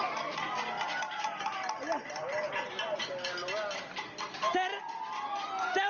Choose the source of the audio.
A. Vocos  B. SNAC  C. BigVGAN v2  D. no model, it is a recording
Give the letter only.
D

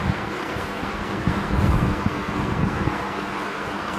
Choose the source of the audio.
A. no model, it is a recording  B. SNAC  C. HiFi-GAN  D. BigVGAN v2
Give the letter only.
B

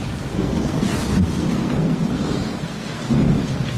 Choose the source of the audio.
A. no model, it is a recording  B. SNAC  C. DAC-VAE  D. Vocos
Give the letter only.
B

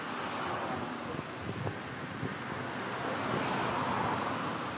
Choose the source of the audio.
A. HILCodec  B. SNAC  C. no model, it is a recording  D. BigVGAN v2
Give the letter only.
C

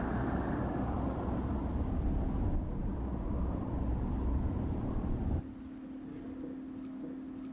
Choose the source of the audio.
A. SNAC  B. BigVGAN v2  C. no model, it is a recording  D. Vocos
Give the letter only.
C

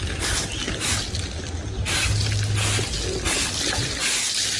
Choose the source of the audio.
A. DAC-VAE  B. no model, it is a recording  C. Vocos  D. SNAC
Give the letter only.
B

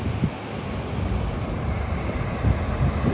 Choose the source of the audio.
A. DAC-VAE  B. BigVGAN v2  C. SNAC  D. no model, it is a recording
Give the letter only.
D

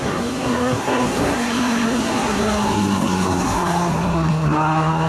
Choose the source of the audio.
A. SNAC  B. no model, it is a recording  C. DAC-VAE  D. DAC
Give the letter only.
A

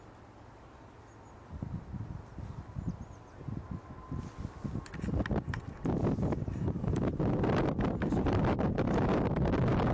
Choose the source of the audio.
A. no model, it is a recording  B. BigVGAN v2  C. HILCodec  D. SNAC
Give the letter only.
A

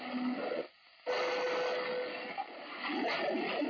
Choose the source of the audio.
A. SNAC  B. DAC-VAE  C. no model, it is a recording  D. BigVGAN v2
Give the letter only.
C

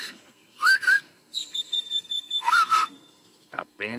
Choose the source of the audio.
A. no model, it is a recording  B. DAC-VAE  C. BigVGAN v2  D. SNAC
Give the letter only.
D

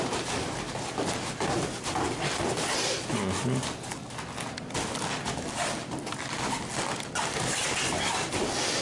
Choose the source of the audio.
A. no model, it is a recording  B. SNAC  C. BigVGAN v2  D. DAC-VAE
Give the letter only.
A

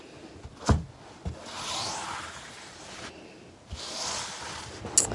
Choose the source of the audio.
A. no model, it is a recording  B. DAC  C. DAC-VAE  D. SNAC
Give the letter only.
A